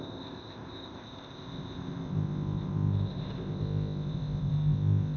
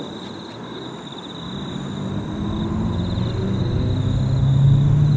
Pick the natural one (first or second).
second